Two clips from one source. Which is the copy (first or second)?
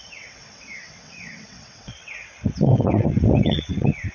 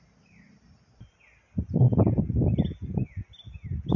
first